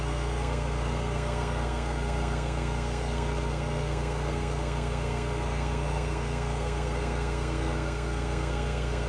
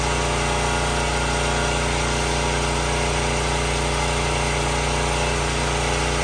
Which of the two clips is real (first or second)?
second